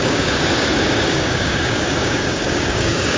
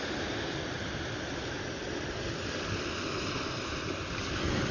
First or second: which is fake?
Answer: first